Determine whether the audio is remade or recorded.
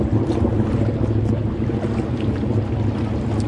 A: recorded